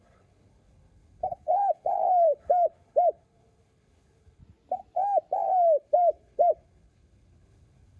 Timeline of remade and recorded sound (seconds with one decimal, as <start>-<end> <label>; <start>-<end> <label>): 0.0-4.4 remade; 4.4-5.4 recorded; 5.4-8.0 remade

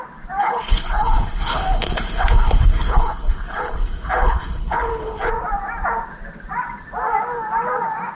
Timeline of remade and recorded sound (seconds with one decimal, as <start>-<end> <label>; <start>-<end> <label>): 0.0-0.4 recorded; 0.4-5.3 remade; 5.3-8.2 recorded